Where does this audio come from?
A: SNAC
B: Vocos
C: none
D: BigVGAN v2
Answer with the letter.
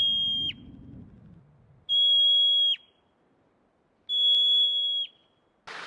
C